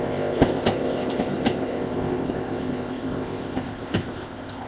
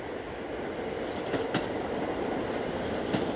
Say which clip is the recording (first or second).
second